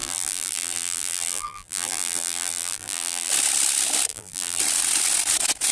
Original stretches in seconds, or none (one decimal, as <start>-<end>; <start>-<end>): 3.3-4.1; 4.6-5.7